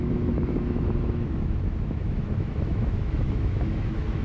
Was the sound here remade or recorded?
remade